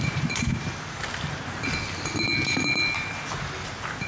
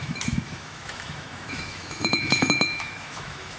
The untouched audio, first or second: first